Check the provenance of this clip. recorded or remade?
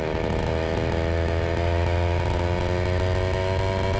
recorded